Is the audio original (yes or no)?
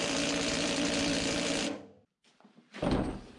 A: no